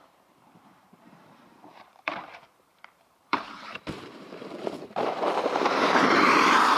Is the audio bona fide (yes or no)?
no